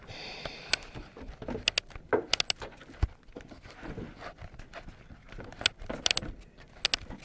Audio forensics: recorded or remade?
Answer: recorded